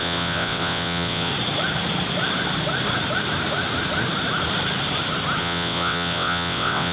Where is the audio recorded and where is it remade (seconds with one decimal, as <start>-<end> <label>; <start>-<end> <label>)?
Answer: 0.0-1.3 remade; 1.3-5.4 recorded; 5.4-6.9 remade